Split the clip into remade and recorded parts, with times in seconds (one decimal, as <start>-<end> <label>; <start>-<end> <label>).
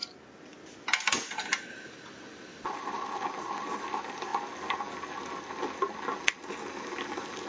0.0-7.5 recorded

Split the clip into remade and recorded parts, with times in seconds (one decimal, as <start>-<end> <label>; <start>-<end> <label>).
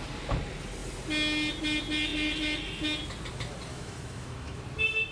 0.0-3.7 recorded; 3.7-4.6 remade; 4.6-5.1 recorded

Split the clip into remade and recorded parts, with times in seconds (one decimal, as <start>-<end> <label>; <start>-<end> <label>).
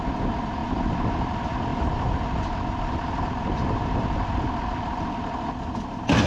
0.0-0.6 recorded; 0.6-1.2 remade; 1.2-1.7 recorded; 1.7-5.1 remade; 5.1-6.3 recorded